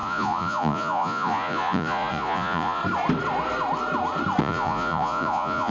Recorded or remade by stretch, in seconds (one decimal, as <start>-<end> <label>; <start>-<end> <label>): 0.0-2.8 remade; 2.8-4.4 recorded; 4.4-5.7 remade